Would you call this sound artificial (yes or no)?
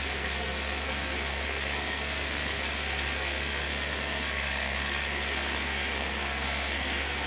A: yes